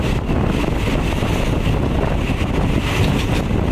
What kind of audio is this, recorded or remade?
recorded